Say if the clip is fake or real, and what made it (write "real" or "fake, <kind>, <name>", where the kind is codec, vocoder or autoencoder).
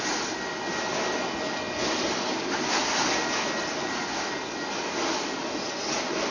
real